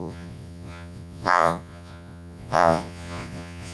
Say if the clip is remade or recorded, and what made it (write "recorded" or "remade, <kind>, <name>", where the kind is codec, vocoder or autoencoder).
remade, vocoder, Vocos